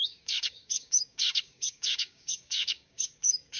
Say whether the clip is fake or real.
fake